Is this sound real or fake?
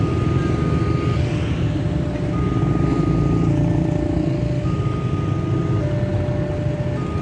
real